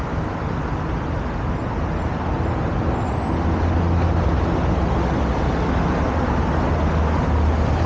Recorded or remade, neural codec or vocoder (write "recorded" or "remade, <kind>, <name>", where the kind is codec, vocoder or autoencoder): recorded